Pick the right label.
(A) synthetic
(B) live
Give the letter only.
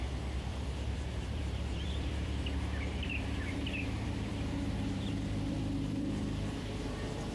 A